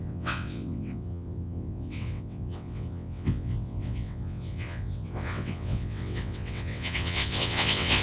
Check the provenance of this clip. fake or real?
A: fake